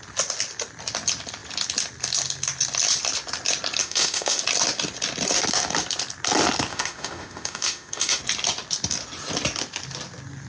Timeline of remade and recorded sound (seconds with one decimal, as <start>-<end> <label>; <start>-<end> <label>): 0.0-3.8 recorded; 3.8-4.4 remade; 4.4-6.7 recorded; 6.7-8.2 remade; 8.2-10.5 recorded